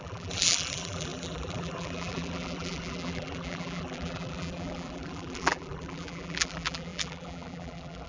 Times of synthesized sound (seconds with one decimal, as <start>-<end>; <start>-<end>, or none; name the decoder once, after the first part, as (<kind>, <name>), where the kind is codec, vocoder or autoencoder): 0.0-8.1 (vocoder, BigVGAN v2)